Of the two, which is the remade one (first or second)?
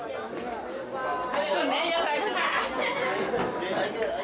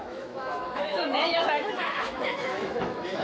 second